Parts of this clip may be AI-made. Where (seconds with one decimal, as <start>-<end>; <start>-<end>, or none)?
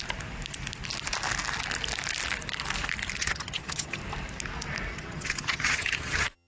3.2-4.0; 4.9-6.5